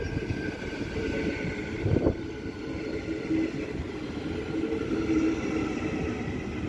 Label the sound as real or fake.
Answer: real